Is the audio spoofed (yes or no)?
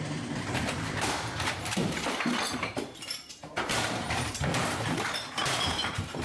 yes